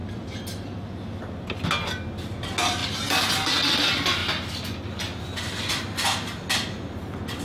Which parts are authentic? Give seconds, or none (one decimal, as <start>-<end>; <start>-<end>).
1.2-7.4